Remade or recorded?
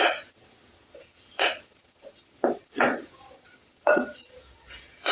remade